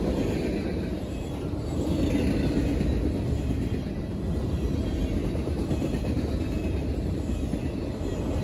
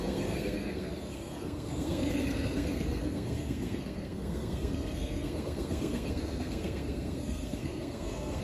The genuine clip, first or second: first